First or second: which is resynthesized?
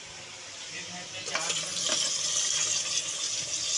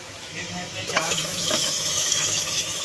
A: second